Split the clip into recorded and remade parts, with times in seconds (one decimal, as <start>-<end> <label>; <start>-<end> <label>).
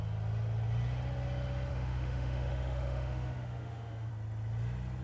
0.0-1.7 recorded; 1.7-4.1 remade; 4.1-5.0 recorded